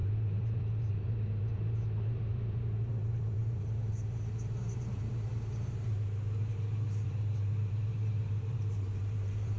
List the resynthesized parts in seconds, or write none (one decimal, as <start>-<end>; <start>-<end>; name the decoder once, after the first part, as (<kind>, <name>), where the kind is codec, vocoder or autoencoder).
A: 0.0-9.6 (vocoder, BigVGAN v2)